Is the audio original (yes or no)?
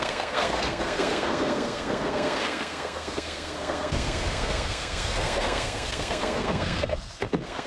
no